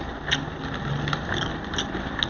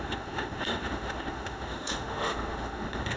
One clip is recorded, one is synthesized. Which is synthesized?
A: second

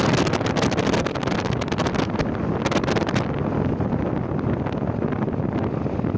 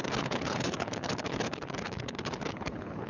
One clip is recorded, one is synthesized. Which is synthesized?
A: second